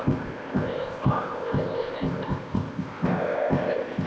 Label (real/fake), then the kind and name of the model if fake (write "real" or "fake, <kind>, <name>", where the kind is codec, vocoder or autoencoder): fake, codec, ZipCodec